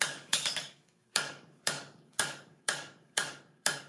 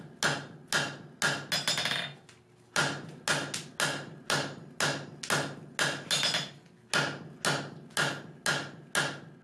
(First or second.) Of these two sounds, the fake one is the first